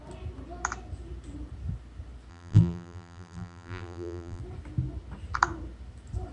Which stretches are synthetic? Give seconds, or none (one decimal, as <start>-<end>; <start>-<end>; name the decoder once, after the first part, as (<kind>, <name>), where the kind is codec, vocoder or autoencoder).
2.3-4.4 (vocoder, BigVGAN v2)